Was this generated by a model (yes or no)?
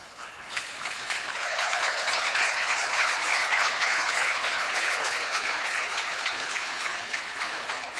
yes